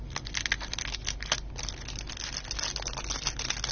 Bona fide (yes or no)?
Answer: yes